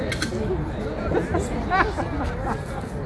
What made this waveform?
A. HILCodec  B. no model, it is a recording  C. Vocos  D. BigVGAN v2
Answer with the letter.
B